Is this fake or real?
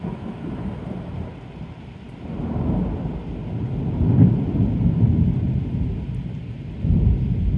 real